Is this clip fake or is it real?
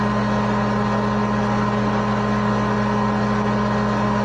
real